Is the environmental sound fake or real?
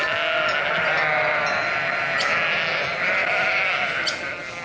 real